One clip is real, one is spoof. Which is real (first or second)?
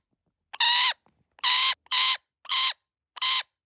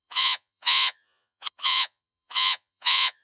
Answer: first